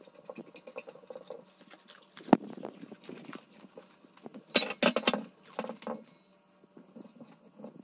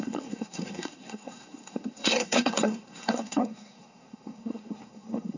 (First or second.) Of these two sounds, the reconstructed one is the second